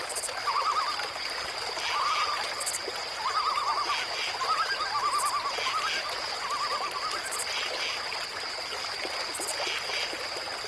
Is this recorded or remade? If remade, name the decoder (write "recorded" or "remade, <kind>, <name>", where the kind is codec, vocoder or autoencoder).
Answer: recorded